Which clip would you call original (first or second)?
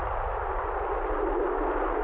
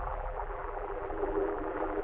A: first